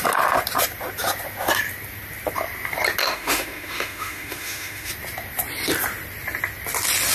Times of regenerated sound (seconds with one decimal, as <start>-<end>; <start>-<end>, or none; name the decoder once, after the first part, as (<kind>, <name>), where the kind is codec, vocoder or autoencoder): 3.0-4.9 (autoencoder, DAC-VAE)